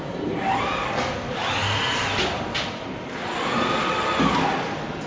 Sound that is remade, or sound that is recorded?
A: recorded